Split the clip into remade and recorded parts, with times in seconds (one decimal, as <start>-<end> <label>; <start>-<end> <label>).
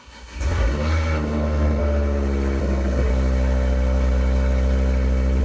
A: 0.0-1.8 remade; 1.8-2.6 recorded; 2.6-3.1 remade; 3.1-5.4 recorded